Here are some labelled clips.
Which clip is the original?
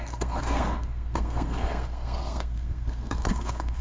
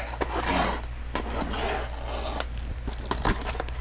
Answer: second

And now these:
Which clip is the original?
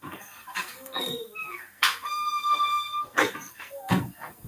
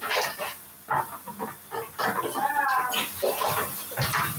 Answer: second